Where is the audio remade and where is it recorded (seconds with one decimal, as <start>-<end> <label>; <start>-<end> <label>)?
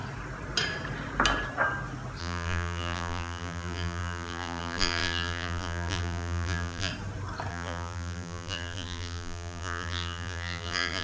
0.0-2.2 recorded; 2.2-6.9 remade; 6.9-7.5 recorded; 7.5-11.0 remade